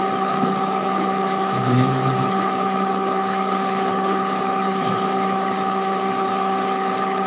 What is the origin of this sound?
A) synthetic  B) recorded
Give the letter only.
A